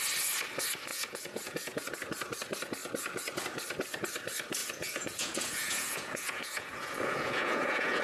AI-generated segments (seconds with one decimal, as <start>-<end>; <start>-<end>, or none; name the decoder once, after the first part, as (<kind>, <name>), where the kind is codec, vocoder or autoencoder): 0.9-1.9 (vocoder, Vocos); 4.6-8.0